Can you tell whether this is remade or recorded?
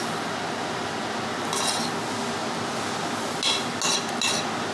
recorded